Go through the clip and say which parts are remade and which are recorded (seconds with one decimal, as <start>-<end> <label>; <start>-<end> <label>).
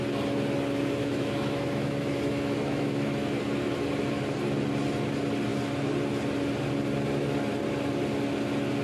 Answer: 0.0-1.0 recorded; 1.0-3.4 remade; 3.4-8.8 recorded